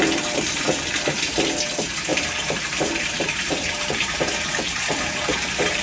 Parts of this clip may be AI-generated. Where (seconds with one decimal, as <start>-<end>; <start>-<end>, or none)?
2.1-5.8